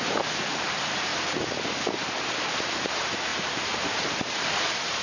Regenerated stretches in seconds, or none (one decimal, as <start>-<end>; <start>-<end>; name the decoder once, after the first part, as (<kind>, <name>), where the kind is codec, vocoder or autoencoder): 0.0-1.1 (vocoder, BigVGAN v2); 2.5-5.0